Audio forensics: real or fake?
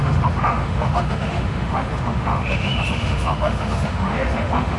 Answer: fake